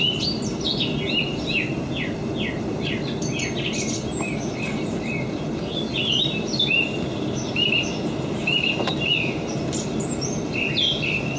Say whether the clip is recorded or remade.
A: recorded